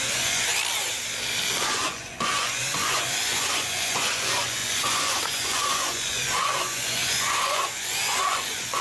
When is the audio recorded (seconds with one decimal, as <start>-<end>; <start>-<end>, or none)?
0.5-1.6